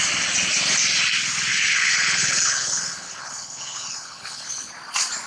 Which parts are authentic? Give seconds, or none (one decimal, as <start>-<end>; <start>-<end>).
0.0-1.5; 4.7-5.3